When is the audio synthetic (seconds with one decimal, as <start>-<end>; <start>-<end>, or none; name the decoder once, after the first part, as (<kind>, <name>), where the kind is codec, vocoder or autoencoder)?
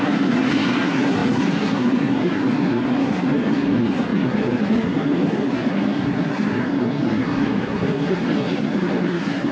0.0-9.5 (codec, SNAC)